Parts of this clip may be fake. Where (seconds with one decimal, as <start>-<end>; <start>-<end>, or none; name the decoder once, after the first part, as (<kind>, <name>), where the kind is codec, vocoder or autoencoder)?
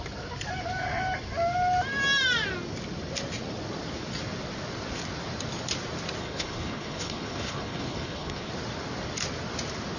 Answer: 6.2-8.5 (codec, HILCodec)